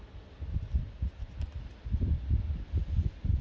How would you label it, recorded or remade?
recorded